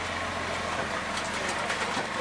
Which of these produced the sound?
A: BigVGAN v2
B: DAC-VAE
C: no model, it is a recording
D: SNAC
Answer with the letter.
C